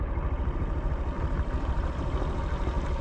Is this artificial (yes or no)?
no